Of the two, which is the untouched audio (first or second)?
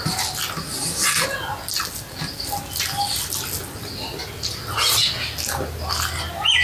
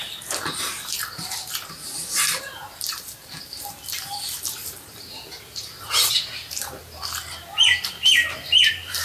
first